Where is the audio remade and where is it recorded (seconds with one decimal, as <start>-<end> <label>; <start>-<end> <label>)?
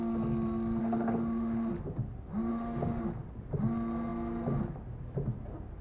0.0-0.8 recorded; 0.8-1.7 remade; 1.7-2.5 recorded; 2.5-3.0 remade; 3.0-5.8 recorded